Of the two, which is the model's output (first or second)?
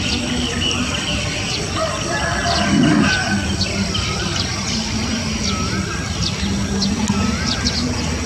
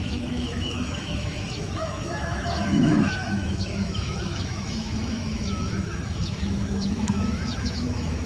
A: second